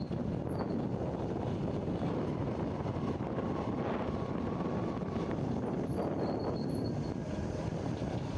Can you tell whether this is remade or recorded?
recorded